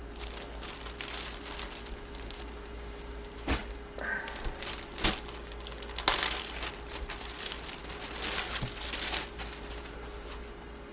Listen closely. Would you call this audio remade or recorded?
recorded